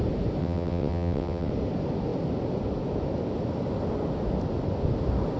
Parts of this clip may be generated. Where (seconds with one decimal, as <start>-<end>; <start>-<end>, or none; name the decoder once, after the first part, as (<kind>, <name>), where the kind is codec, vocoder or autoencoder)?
0.4-1.5 (vocoder, WaveNeXt)